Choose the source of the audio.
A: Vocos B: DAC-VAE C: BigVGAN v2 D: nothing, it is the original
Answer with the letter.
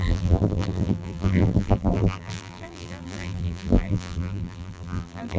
C